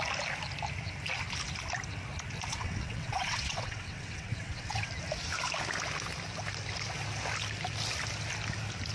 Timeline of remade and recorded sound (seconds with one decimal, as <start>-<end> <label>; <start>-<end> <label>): 0.0-2.5 recorded; 2.5-4.9 remade; 4.9-8.9 recorded